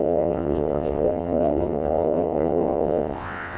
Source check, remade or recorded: remade